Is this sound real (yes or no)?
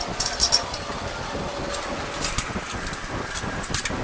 yes